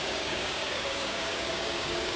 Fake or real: fake